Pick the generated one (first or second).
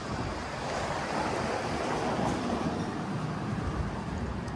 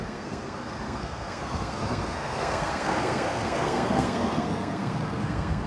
second